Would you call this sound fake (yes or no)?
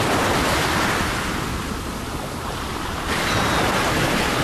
no